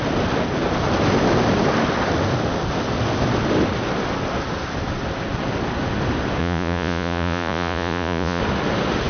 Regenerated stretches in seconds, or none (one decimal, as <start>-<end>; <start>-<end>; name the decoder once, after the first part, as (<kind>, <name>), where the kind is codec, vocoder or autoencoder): 6.4-8.4 (vocoder, Vocos)